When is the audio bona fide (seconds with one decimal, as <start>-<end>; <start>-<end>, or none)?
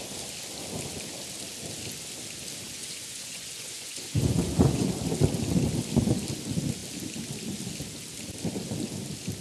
0.0-2.8; 4.9-9.4